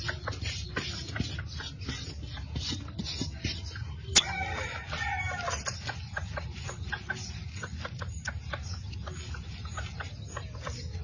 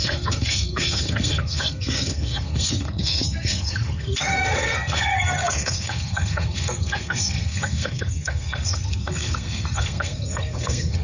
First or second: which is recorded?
first